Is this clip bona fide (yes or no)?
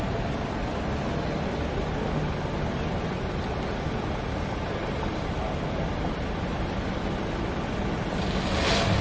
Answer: yes